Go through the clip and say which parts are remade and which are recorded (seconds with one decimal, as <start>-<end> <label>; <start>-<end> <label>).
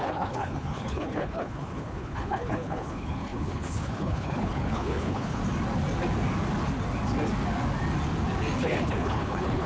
0.0-5.4 remade; 5.4-8.6 recorded; 8.6-9.7 remade